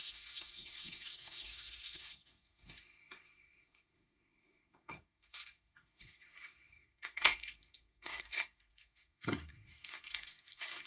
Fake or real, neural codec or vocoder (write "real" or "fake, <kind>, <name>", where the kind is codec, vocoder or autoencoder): fake, codec, SNAC